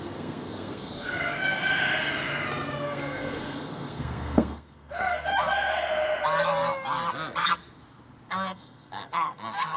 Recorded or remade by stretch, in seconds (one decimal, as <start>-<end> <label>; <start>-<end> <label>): 0.0-1.6 remade; 1.6-2.5 recorded; 2.5-5.3 remade; 5.3-8.3 recorded; 8.3-9.8 remade